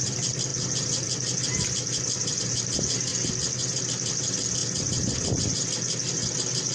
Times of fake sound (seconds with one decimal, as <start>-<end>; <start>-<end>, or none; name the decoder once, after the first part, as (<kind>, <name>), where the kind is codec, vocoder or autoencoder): none